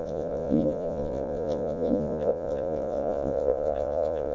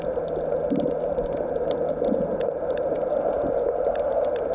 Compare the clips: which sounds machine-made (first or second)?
first